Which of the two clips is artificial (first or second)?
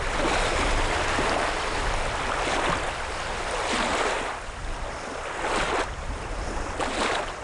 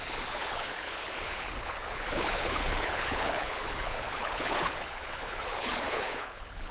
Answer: second